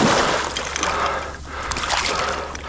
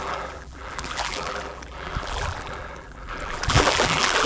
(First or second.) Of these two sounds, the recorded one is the first